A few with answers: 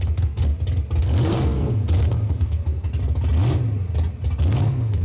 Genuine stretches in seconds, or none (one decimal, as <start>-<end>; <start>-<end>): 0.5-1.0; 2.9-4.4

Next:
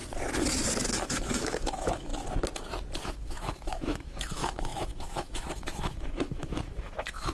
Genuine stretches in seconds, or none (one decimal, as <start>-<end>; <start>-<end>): 0.0-0.9; 2.1-3.0

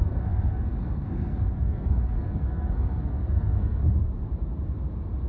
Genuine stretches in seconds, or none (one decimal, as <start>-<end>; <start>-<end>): 3.8-5.3

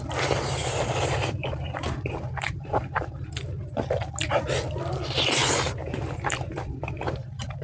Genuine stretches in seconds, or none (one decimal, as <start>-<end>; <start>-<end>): 0.0-0.6; 4.1-5.4

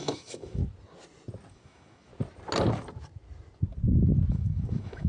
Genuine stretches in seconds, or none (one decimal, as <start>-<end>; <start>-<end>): 0.6-1.5; 2.1-4.3